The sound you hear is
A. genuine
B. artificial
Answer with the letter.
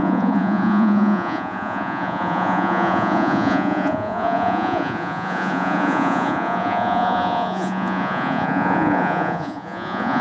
B